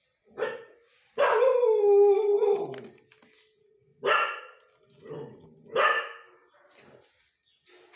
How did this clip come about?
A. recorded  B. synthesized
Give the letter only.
A